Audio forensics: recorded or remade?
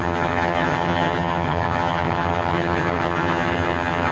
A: remade